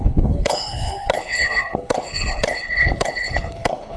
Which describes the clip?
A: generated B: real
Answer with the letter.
A